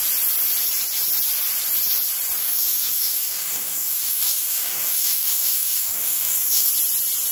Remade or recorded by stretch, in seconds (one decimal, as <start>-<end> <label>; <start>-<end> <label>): 0.0-2.4 recorded; 2.4-6.7 remade; 6.7-7.3 recorded